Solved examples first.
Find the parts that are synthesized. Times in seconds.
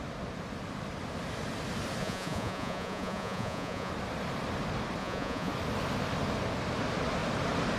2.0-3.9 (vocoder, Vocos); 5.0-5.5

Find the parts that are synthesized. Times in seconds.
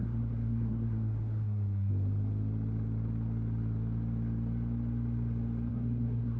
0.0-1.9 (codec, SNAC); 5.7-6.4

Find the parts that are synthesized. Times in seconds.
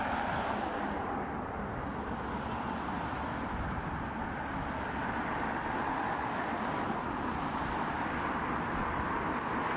0.0-1.0 (vocoder, BigVGAN v2); 6.1-9.8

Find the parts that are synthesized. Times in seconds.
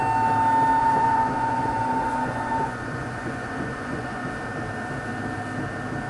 0.8-4.3 (vocoder, Vocos)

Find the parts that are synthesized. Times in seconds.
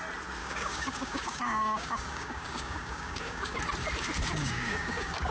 0.4-3.6 (codec, DAC); 4.4-5.3